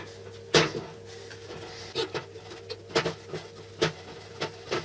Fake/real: real